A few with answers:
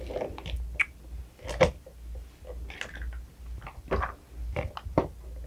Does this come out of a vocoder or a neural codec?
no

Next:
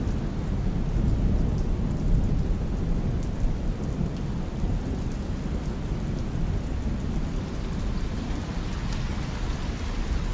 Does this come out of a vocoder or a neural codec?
no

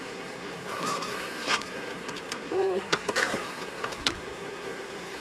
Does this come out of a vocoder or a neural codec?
yes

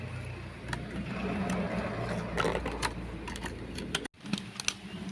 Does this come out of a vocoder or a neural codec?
no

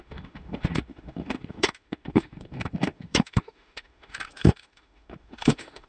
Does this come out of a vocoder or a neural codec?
yes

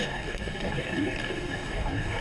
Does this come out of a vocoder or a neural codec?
yes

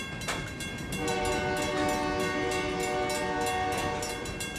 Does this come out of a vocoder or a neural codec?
no